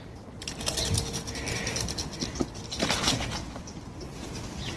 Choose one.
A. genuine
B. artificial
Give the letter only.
A